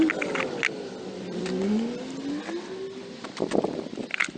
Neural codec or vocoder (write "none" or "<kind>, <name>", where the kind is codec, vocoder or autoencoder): none